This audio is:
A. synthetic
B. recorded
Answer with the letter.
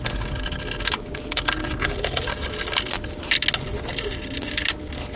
B